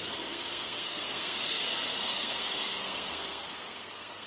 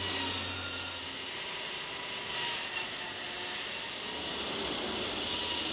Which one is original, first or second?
second